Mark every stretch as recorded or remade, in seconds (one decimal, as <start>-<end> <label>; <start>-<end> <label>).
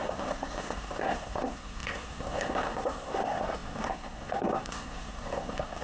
0.0-5.8 remade